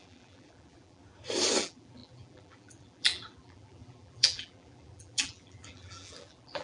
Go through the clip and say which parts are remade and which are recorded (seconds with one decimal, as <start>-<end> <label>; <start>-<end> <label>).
0.0-1.0 remade; 1.0-1.6 recorded; 1.6-6.6 remade